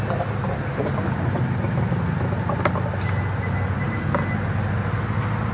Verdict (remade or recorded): recorded